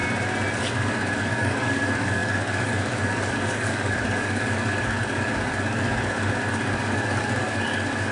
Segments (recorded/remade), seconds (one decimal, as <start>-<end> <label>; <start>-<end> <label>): 0.0-0.6 recorded; 0.6-8.1 remade

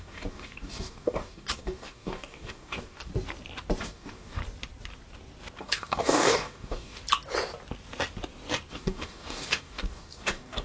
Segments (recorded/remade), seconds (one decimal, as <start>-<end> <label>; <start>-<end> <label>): 0.0-3.1 remade; 3.1-3.8 recorded; 3.8-4.4 remade; 4.4-5.6 recorded; 5.6-7.0 remade; 7.0-8.7 recorded; 8.7-10.6 remade

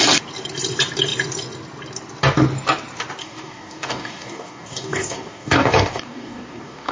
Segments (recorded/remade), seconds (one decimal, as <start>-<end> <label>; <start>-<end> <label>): 0.0-3.2 recorded; 3.2-6.9 remade

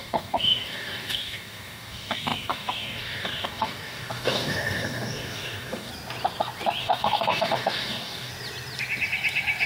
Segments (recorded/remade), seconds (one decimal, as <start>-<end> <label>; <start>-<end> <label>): 0.0-5.9 remade; 5.9-6.8 recorded; 6.8-8.3 remade; 8.3-9.7 recorded

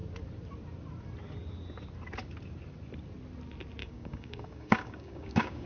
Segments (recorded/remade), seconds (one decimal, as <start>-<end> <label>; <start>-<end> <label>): 0.0-3.8 recorded; 3.8-5.7 remade

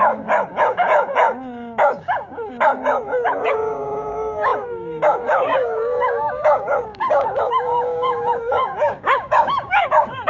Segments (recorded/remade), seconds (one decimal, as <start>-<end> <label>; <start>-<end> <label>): 0.0-10.3 remade

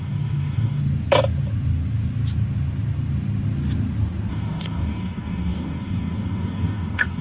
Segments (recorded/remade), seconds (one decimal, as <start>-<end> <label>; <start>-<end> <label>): 0.0-0.8 remade; 0.8-4.3 recorded; 4.3-7.2 remade

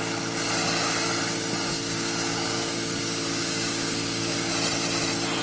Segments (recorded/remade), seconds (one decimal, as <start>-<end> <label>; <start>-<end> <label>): 0.0-1.7 recorded; 1.7-4.5 remade; 4.5-5.4 recorded